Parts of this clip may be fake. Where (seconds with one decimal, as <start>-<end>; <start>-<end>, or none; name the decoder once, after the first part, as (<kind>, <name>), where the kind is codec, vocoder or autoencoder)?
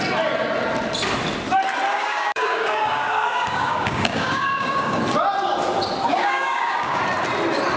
1.9-5.0 (codec, DAC); 6.1-7.0